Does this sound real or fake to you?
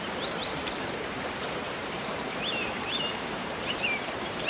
fake